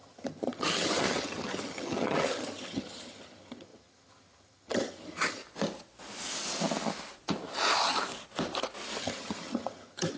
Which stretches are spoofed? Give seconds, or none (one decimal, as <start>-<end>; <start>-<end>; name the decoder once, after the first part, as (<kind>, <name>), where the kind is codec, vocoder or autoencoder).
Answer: 0.0-5.4 (vocoder, HiFi-GAN); 9.0-10.2